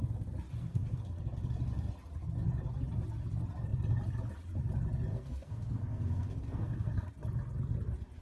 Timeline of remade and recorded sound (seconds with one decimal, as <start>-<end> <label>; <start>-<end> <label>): 0.0-0.6 recorded; 0.6-1.2 remade; 1.2-5.1 recorded; 5.1-7.1 remade; 7.1-8.2 recorded

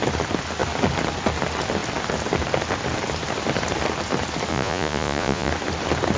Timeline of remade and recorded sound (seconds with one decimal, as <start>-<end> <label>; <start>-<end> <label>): 0.0-4.5 recorded; 4.5-5.5 remade; 5.5-6.2 recorded

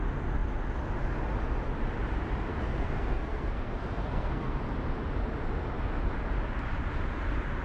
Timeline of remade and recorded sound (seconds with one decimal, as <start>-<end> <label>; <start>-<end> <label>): 0.0-2.5 recorded; 2.5-4.6 remade; 4.6-7.6 recorded